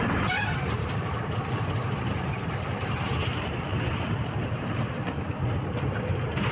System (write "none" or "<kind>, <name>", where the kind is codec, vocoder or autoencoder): vocoder, BigVGAN v2